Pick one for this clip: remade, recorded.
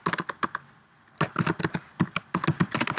recorded